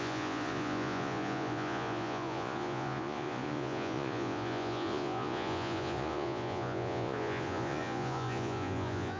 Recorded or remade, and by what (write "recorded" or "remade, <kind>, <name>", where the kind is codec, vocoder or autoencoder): remade, vocoder, Vocos